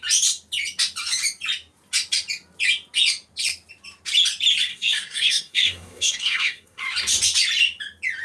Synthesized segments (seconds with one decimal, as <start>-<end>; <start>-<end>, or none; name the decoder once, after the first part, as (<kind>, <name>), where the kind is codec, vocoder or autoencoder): 4.7-6.8 (codec, SNAC)

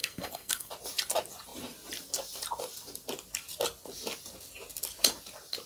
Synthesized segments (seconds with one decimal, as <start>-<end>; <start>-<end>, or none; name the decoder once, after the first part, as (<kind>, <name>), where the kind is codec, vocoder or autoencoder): 0.0-0.7 (codec, SNAC)

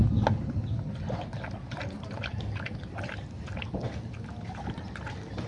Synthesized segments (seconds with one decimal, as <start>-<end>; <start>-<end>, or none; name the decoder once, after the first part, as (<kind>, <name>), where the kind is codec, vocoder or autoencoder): none

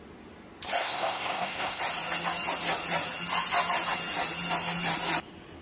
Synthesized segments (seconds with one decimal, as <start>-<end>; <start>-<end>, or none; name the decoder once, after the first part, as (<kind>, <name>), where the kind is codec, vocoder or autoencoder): 0.8-1.8 (codec, SNAC)

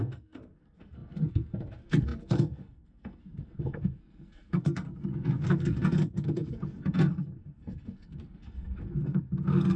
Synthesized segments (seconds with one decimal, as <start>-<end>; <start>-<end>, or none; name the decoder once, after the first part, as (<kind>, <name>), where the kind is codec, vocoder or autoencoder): 0.0-9.8 (codec, SNAC)